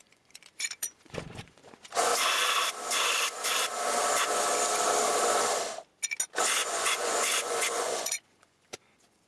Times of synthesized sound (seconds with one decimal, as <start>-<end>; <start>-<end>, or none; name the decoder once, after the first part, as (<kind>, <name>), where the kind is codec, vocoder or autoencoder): 0.0-2.1 (vocoder, Vocos); 6.6-9.3